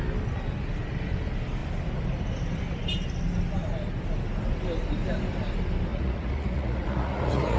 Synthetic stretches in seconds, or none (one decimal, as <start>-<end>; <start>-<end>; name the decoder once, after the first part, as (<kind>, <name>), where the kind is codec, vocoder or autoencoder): 5.9-7.6 (vocoder, Vocos)